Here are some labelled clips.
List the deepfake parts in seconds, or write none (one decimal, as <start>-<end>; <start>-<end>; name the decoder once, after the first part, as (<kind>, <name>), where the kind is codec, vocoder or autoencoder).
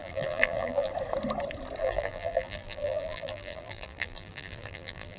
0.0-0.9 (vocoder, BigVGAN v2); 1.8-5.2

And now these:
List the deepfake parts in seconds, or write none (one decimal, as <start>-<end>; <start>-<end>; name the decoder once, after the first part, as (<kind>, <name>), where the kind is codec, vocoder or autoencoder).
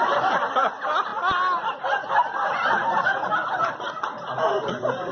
none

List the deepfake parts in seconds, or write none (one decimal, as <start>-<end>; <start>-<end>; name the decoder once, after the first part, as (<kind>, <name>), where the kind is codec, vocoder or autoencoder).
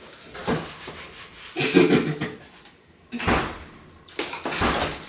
none